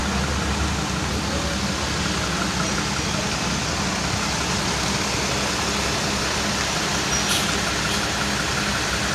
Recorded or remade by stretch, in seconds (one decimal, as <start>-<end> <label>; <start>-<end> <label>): 0.0-9.1 recorded